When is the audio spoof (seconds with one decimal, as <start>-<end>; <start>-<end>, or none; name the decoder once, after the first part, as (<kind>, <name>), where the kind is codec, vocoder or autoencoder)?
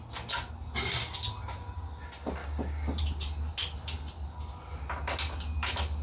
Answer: 2.4-3.0 (codec, DAC)